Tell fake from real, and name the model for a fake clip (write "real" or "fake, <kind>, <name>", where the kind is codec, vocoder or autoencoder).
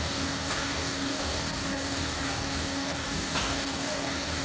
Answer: fake, codec, DAC